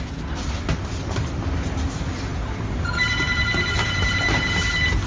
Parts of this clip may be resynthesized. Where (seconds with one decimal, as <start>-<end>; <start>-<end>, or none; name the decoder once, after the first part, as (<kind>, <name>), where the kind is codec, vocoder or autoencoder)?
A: none